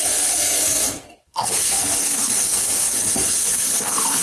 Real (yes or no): no